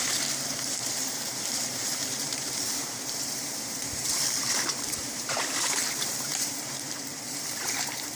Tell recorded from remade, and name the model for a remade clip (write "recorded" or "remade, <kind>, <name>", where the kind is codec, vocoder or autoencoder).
remade, vocoder, BigVGAN v2